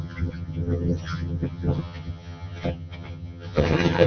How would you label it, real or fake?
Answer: fake